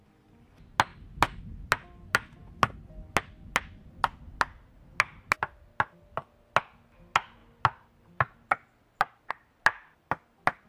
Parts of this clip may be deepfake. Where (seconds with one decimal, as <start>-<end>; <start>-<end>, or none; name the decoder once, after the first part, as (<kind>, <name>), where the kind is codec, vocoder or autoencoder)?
none